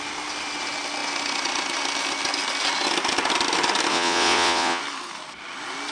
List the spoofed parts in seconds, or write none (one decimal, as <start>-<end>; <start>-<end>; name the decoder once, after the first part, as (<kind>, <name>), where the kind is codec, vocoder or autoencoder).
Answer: 3.9-4.8 (vocoder, WaveNeXt)